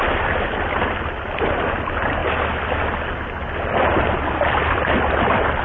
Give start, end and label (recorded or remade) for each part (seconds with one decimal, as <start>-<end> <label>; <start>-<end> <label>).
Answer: 0.0-5.6 recorded